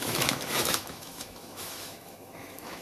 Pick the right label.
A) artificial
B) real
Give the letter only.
A